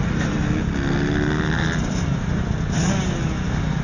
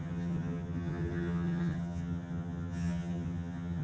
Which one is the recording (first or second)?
first